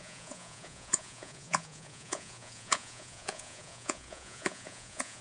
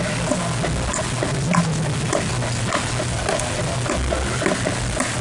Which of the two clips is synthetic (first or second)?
first